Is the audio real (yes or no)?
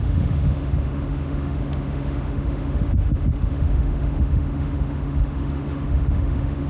no